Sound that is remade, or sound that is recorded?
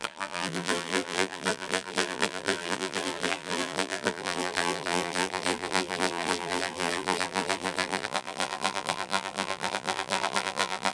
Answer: remade